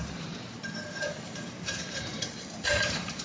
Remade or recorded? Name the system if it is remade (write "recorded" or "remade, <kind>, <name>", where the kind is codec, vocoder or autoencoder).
remade, vocoder, BigVGAN v2